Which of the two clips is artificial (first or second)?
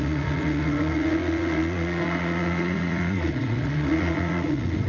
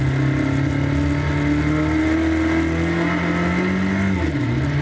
first